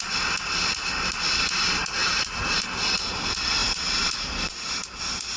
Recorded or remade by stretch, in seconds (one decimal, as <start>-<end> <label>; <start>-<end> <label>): 0.0-2.0 recorded; 2.0-2.8 remade; 2.8-3.6 recorded; 3.6-4.7 remade; 4.7-5.4 recorded